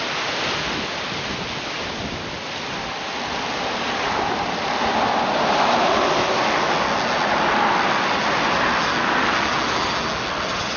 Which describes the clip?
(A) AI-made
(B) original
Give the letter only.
B